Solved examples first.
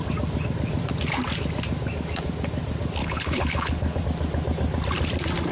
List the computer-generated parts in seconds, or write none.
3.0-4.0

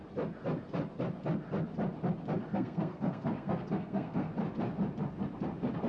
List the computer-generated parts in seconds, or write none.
2.5-4.3

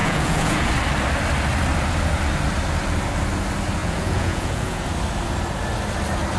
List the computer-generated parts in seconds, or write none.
0.0-0.7; 3.8-4.8

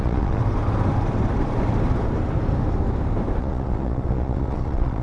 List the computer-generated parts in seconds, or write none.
0.0-0.4; 3.4-5.0